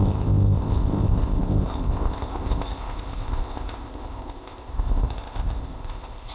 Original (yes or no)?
no